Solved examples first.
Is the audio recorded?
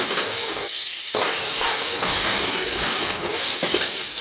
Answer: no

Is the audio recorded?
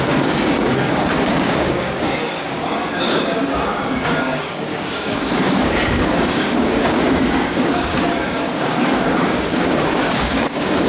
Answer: no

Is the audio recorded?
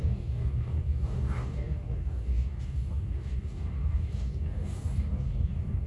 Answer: no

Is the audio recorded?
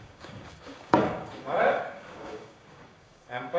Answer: no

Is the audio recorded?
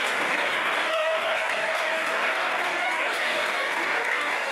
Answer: no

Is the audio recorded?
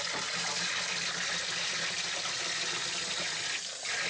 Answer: yes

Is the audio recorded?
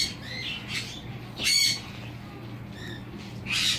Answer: yes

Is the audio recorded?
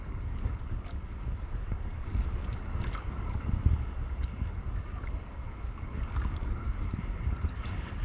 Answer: no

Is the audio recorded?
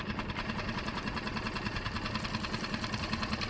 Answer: yes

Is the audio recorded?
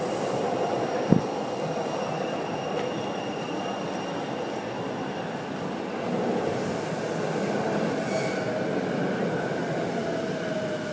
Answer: yes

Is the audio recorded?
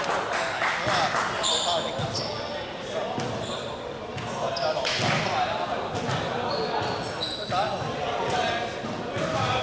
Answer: yes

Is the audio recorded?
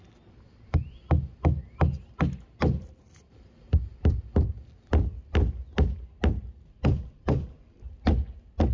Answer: yes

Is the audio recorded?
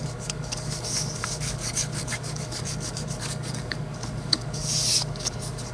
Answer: no